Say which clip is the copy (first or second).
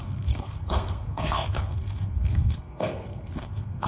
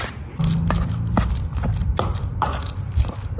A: first